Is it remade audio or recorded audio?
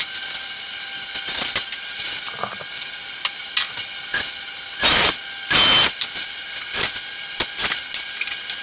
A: recorded